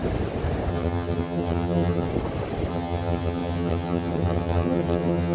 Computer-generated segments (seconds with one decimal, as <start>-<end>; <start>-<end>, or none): 0.7-2.1; 2.7-5.3